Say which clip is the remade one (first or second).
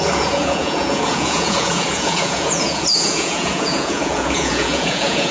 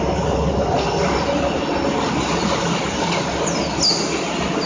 first